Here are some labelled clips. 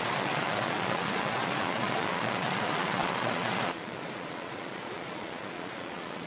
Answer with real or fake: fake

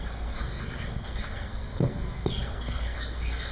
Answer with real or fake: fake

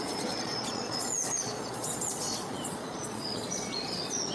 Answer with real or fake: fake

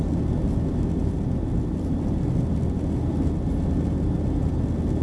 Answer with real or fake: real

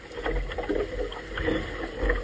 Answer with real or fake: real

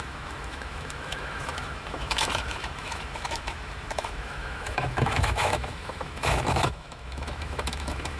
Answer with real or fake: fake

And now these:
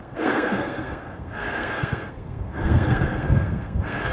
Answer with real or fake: fake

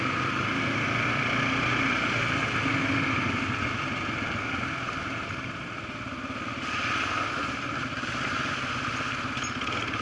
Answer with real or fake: real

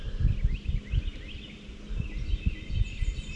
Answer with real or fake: real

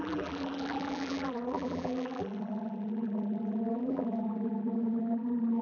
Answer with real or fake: fake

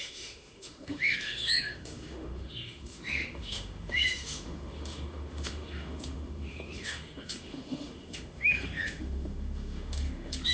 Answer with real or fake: fake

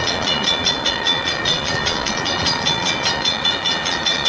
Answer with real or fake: fake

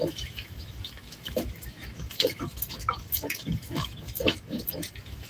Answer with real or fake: fake